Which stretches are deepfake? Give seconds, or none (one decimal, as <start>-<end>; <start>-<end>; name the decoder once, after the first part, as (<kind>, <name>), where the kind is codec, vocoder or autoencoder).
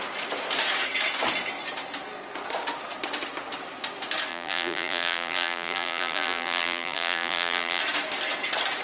4.3-7.8 (vocoder, BigVGAN v2)